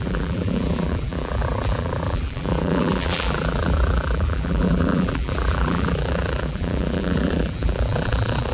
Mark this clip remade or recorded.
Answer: remade